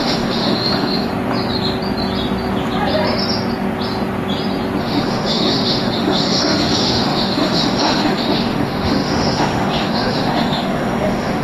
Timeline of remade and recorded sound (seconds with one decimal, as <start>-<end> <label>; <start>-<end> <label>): 0.0-1.1 remade; 1.1-4.8 recorded; 4.8-11.4 remade